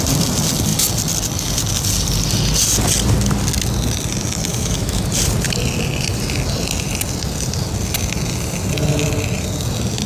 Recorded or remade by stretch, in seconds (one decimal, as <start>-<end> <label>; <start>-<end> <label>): 0.0-4.5 recorded; 4.5-5.0 remade; 5.0-10.1 recorded